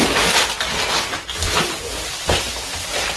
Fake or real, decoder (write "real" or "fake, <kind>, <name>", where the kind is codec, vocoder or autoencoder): real